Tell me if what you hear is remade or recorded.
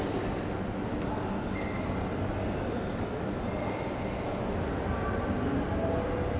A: recorded